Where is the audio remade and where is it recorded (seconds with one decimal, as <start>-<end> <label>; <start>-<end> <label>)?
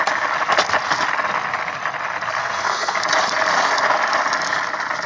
0.0-2.4 recorded; 2.4-3.0 remade; 3.0-5.1 recorded